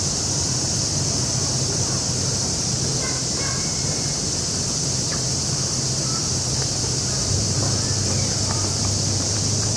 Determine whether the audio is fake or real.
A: fake